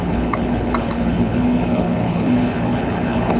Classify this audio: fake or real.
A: fake